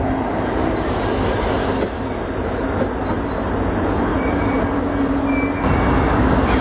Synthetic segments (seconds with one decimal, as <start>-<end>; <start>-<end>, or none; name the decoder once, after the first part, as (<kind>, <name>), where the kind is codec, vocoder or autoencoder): none